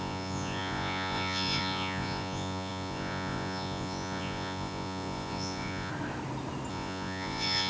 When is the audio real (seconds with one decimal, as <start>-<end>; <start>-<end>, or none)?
5.9-6.7